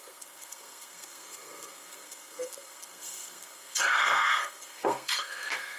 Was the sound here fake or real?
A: fake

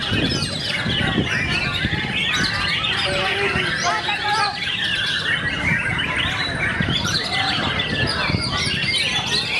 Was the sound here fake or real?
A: real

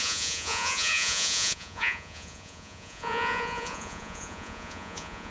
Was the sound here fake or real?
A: fake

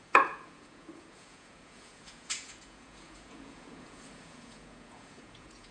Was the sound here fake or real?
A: fake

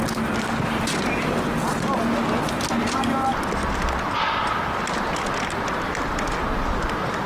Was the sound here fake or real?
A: real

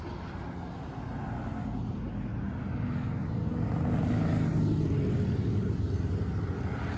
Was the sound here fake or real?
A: real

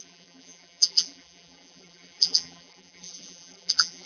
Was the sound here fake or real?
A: fake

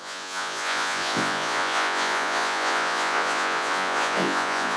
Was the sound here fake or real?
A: fake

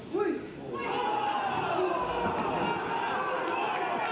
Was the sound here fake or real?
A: real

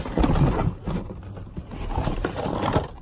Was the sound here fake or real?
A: real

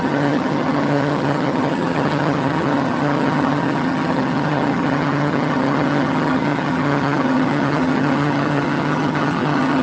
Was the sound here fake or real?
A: fake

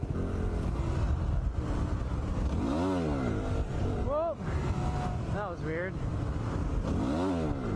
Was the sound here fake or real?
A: real